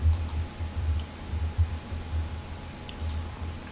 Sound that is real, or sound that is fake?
real